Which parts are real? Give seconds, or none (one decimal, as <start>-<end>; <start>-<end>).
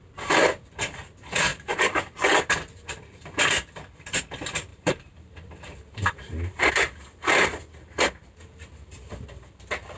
0.0-1.5; 2.1-4.7; 6.7-10.0